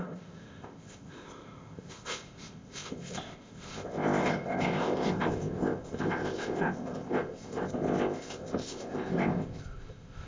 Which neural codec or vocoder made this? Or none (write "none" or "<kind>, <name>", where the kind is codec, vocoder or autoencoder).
codec, ZipCodec